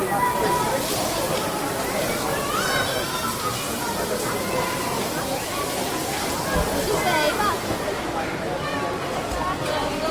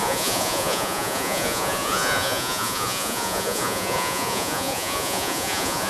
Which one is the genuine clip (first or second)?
first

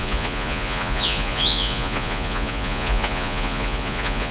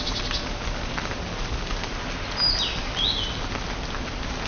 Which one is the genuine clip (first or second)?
second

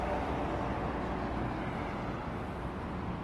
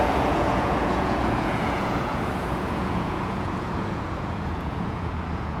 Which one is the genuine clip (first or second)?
first